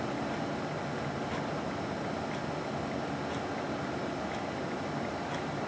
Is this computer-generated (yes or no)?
no